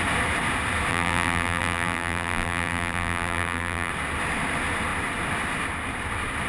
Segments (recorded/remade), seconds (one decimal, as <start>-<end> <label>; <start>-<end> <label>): 0.0-0.9 recorded; 0.9-3.9 remade; 3.9-6.5 recorded